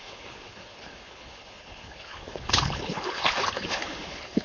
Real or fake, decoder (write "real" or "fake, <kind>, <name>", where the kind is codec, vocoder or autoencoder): fake, codec, HILCodec